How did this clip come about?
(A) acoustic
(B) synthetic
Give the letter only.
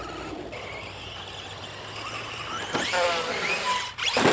A